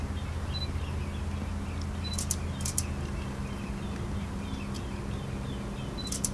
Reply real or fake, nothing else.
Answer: real